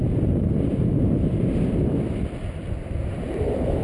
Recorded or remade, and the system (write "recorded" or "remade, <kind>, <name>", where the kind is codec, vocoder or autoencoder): recorded